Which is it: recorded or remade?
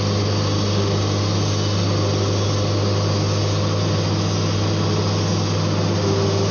recorded